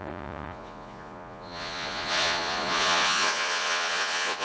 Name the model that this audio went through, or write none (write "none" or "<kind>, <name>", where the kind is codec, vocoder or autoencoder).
vocoder, Vocos